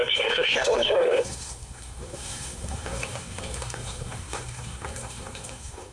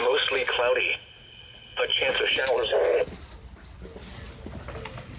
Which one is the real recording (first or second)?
second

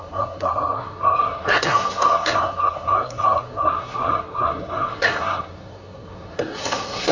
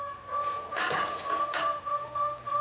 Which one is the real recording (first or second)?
second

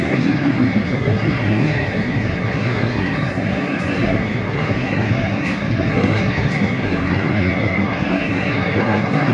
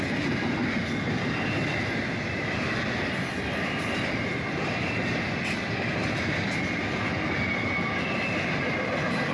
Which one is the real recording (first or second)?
second